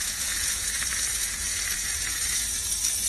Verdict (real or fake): fake